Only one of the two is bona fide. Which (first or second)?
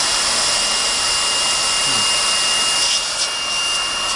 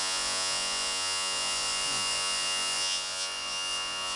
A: first